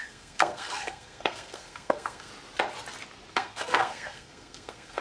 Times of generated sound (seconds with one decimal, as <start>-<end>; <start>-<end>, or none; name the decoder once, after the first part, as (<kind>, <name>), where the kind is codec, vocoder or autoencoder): 0.0-2.3 (codec, SNAC); 3.3-5.0